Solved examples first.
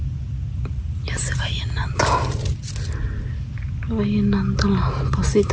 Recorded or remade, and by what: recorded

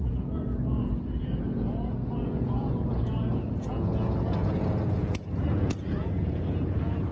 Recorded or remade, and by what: remade, vocoder, Vocos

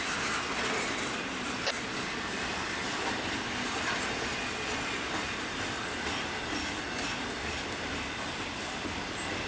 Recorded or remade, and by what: recorded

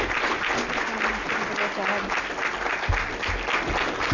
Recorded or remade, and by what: recorded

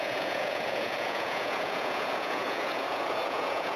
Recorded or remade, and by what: remade, vocoder, Vocos